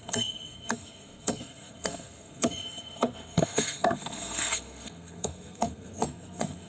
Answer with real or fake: fake